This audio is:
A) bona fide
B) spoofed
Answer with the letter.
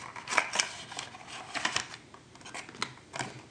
A